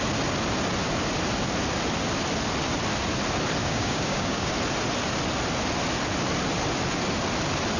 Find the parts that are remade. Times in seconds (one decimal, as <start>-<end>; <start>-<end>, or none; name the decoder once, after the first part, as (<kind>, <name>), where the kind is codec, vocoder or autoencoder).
3.6-4.5 (codec, DAC)